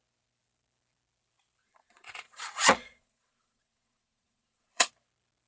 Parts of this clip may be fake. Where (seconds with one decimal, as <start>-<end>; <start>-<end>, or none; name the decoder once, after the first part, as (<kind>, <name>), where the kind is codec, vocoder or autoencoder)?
1.6-4.9 (vocoder, Vocos)